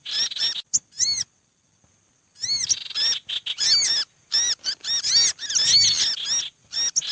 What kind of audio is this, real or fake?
real